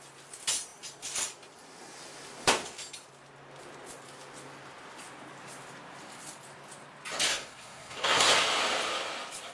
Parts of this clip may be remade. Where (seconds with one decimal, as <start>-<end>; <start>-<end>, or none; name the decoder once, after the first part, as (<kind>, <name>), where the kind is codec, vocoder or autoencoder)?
7.3-8.3 (codec, SNAC)